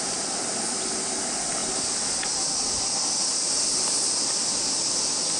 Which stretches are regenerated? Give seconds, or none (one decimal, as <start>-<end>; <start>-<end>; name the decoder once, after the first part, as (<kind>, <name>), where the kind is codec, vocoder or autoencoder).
none